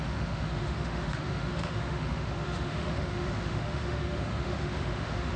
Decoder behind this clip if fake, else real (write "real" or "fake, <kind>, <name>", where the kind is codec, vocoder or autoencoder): fake, autoencoder, DAC-VAE